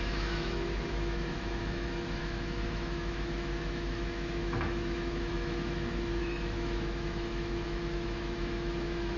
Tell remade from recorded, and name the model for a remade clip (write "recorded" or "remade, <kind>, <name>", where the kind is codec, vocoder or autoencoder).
remade, autoencoder, DAC-VAE